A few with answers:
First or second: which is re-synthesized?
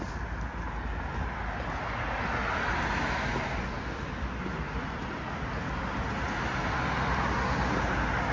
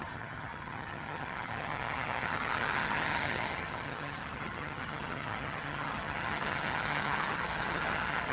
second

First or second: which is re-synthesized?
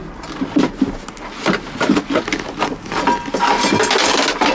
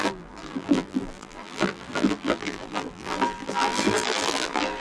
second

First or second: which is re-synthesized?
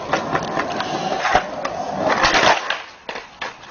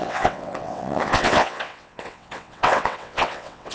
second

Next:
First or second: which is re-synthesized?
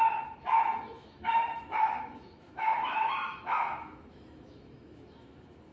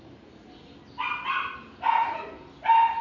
first